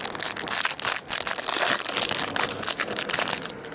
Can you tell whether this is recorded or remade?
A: recorded